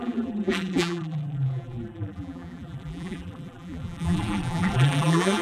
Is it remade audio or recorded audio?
remade